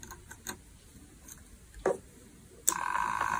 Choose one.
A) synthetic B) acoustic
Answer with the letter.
B